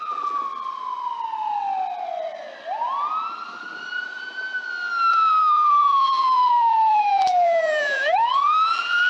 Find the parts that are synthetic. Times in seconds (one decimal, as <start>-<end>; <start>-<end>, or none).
0.0-0.4; 5.1-9.1

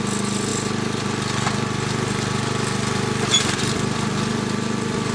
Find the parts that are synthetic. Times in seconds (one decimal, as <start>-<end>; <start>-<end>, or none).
none

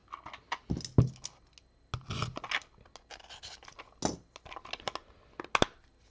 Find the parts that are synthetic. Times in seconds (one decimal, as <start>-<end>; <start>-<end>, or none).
none